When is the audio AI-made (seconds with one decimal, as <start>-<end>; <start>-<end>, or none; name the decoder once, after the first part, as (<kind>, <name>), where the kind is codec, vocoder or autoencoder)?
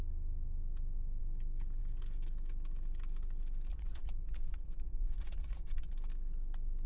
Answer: 3.7-5.9 (vocoder, Vocos)